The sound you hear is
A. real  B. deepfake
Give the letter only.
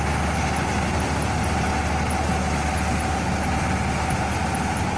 A